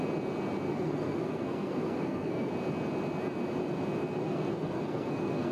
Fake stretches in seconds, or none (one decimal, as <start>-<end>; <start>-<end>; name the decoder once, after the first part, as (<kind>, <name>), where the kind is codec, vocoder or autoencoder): 0.7-2.5 (codec, SNAC); 4.2-5.5